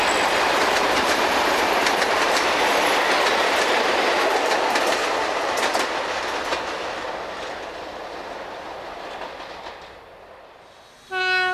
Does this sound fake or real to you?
real